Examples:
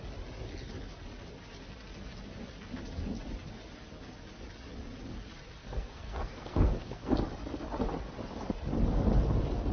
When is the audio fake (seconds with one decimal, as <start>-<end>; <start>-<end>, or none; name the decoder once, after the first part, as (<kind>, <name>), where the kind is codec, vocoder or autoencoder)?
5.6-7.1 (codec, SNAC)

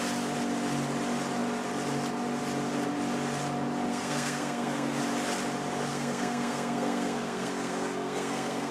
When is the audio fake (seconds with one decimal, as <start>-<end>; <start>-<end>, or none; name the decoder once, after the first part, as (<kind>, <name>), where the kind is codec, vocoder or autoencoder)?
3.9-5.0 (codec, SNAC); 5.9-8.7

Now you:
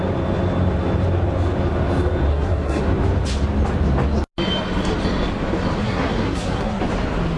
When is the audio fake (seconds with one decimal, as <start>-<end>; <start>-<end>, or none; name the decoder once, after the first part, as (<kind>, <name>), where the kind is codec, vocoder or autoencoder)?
2.3-2.8 (codec, SNAC); 5.8-6.8